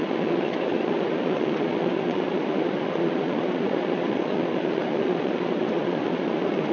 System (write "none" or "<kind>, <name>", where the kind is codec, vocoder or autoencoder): vocoder, Vocos